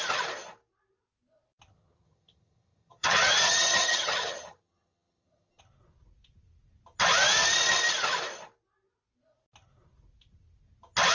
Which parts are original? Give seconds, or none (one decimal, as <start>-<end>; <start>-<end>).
0.0-1.7; 5.6-11.1